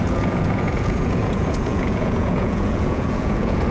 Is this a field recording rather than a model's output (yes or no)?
no